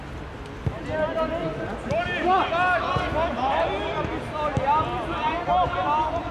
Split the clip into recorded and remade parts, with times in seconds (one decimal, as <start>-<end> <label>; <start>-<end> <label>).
0.0-6.3 recorded